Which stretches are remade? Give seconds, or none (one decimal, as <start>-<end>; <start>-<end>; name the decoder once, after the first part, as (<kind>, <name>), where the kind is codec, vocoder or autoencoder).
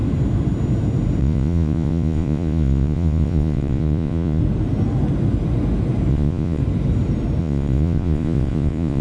1.2-4.4 (vocoder, Vocos); 6.1-6.6; 7.4-9.0